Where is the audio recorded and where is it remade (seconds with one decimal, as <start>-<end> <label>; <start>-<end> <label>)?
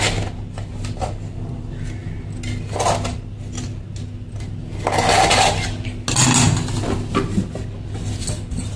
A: 0.0-8.8 recorded